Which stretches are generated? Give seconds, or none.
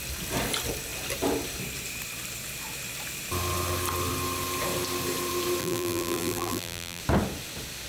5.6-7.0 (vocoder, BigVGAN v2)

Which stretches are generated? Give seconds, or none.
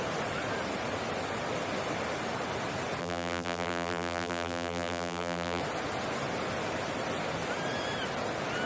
3.0-5.6 (vocoder, BigVGAN v2)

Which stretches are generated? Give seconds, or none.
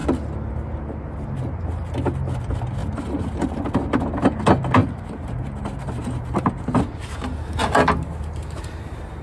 2.8-3.4 (vocoder, BigVGAN v2); 4.8-6.8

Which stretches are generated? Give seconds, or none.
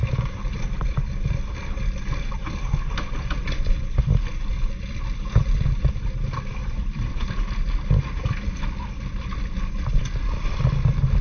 4.3-5.0 (vocoder, BigVGAN v2); 6.6-7.1